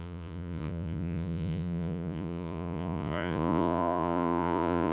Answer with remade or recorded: remade